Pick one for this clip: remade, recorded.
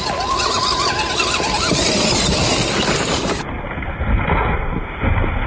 recorded